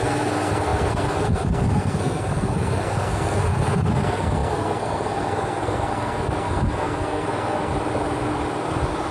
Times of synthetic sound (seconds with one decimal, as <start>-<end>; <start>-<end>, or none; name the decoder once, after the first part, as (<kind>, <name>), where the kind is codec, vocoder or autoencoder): 0.0-7.7 (codec, SNAC)